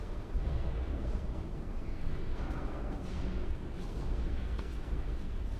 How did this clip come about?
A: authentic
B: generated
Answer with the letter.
B